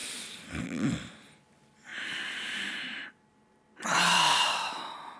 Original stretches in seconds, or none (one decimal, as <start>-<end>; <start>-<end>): 0.0-5.2